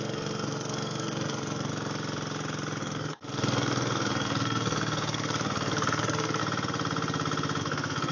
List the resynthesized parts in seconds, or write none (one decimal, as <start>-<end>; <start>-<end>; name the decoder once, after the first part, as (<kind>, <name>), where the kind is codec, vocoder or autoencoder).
0.0-1.7 (codec, SNAC); 2.8-6.4; 7.6-8.1